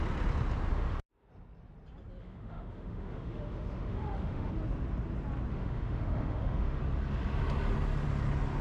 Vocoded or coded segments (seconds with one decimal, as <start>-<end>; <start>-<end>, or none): 0.7-1.3; 2.2-4.5; 5.5-6.8